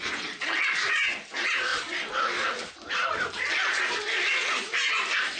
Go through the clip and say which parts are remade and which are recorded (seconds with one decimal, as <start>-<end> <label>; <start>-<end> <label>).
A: 0.0-5.4 recorded